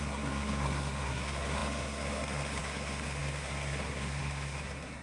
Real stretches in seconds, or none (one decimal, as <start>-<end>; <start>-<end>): none